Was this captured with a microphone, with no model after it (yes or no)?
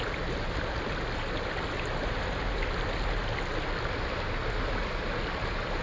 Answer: yes